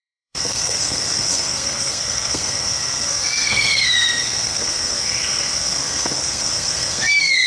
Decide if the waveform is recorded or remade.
remade